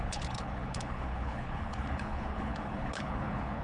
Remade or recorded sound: remade